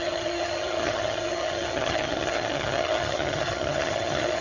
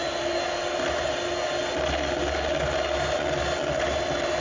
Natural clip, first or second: second